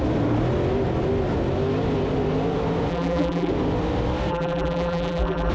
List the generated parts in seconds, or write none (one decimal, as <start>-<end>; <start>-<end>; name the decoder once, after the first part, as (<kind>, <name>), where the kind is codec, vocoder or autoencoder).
2.9-3.5 (vocoder, BigVGAN v2); 4.3-5.5